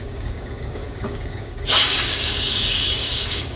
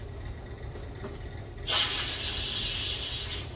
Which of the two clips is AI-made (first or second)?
first